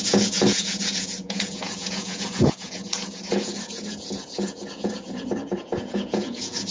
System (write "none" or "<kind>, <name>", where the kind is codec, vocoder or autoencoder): vocoder, Vocos